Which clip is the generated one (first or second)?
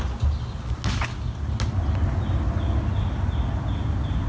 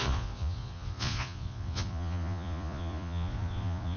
second